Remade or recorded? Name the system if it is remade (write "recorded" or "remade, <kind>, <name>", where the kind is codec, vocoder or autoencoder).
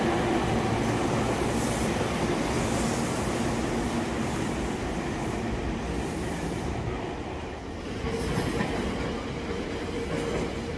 recorded